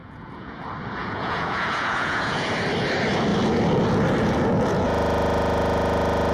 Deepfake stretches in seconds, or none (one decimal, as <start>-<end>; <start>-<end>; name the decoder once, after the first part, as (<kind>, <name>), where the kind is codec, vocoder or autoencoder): 0.0-0.6 (vocoder, Vocos); 1.0-2.5